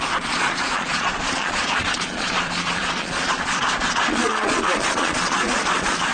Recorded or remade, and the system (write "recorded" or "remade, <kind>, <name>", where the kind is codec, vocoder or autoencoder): remade, vocoder, Vocos